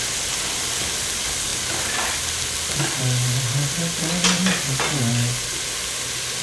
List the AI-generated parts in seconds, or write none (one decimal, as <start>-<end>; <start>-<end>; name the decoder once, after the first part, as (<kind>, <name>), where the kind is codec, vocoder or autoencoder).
none